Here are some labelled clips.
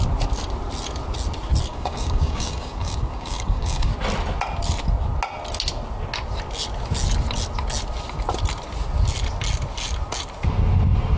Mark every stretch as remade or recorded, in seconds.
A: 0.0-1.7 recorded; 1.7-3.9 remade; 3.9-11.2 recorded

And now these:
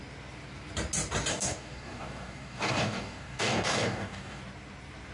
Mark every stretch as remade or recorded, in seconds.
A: 0.0-1.3 recorded; 1.3-4.4 remade; 4.4-5.1 recorded